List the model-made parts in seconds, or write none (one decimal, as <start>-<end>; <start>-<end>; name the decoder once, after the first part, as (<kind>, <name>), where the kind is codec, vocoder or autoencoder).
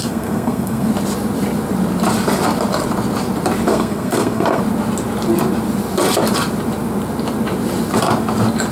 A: 0.0-0.9 (codec, SNAC); 3.7-4.6